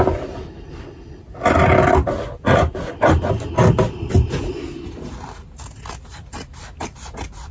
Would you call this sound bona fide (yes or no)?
yes